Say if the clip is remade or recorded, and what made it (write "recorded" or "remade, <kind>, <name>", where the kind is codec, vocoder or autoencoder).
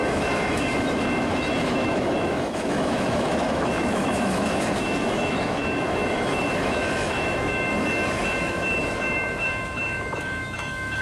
remade, autoencoder, DAC-VAE